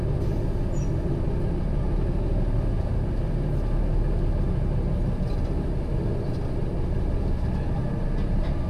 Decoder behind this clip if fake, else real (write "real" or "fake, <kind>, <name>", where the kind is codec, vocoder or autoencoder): real